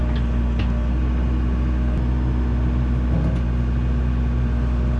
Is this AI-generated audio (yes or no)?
no